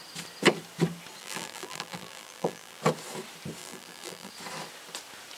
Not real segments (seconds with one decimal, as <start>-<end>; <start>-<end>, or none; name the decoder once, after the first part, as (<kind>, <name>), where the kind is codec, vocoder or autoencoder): 1.2-2.8 (vocoder, BigVGAN v2); 3.6-4.3